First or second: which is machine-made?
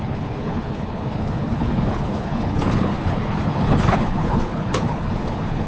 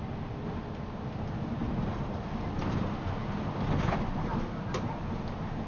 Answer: first